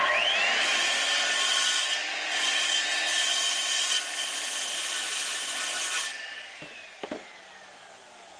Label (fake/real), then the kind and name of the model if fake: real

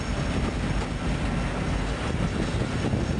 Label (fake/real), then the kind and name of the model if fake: real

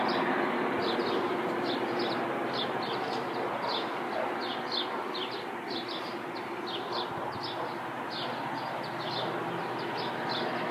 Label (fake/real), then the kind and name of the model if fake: real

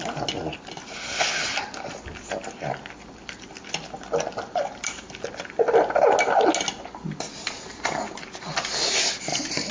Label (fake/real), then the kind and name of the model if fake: real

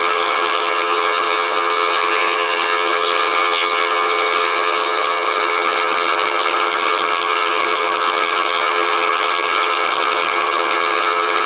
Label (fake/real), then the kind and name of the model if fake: fake, vocoder, HiFi-GAN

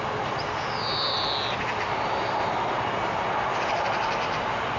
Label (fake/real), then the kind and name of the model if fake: real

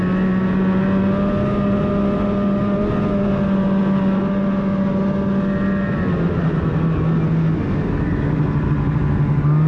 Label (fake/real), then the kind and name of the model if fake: real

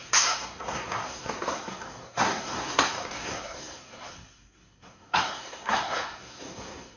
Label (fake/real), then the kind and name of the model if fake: fake, codec, SNAC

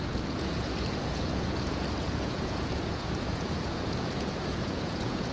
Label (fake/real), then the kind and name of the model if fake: fake, vocoder, Vocos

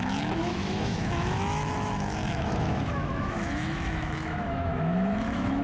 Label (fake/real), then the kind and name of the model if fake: fake, autoencoder, DAC-VAE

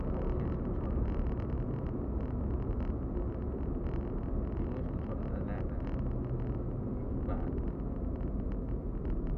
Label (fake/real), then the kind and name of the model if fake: real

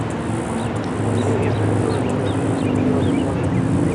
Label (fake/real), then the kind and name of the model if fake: real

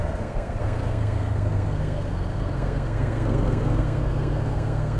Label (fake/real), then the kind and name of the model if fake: fake, codec, SNAC